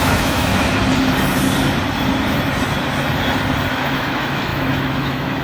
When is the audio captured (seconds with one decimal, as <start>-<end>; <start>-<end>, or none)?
0.5-3.7